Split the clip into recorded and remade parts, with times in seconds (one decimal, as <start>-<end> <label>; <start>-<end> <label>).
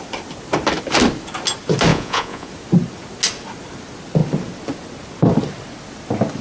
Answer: 0.0-1.9 recorded; 1.9-2.5 remade; 2.5-6.4 recorded